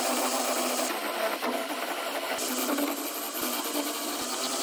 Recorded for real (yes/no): yes